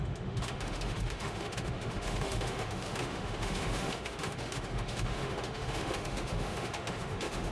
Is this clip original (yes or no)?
no